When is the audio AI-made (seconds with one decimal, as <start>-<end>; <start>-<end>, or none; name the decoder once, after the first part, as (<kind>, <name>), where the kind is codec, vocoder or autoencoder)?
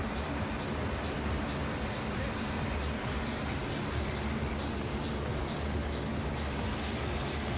none